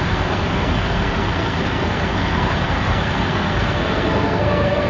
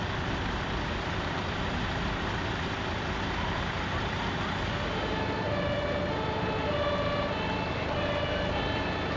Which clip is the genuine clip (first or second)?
second